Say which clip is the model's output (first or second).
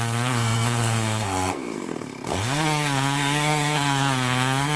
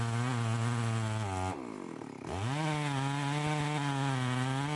first